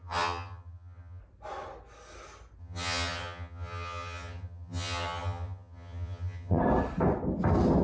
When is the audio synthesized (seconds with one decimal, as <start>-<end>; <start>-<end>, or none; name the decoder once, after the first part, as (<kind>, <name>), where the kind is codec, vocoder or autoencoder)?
0.0-1.2 (vocoder, HiFi-GAN); 2.6-6.6